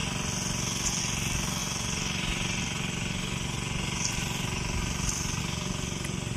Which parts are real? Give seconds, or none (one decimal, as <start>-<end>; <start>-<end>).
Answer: 0.0-6.4